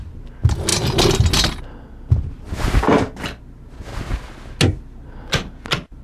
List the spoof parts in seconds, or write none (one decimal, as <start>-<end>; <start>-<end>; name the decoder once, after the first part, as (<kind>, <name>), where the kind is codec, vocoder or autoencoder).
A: none